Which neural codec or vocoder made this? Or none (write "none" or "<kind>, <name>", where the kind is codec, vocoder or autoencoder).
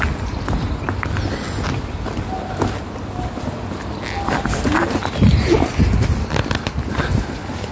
none